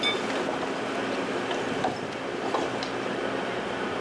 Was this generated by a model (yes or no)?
no